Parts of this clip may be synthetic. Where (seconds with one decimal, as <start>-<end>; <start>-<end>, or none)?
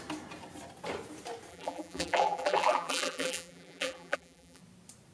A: 1.5-4.6